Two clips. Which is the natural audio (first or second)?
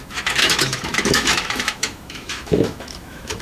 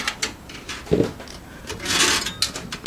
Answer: second